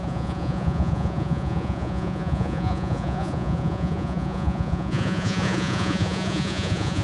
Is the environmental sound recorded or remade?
remade